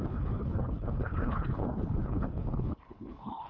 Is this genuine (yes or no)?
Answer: no